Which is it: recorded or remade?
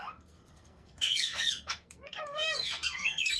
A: remade